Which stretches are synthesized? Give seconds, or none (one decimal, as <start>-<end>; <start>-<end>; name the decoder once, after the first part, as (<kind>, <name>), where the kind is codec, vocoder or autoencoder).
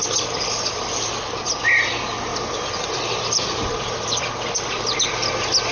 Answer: 2.3-4.3 (vocoder, BigVGAN v2)